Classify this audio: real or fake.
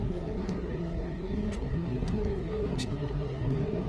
fake